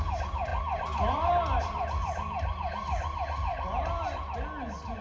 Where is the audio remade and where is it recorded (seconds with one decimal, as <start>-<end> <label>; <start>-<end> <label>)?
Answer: 0.0-5.0 recorded